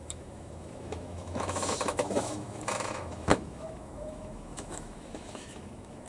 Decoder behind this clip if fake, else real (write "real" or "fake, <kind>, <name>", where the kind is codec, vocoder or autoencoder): fake, autoencoder, DAC-VAE